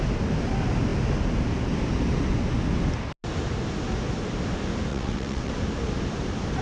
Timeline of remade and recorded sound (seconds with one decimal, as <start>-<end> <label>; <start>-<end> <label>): 0.0-4.9 recorded; 4.9-5.5 remade; 5.5-6.6 recorded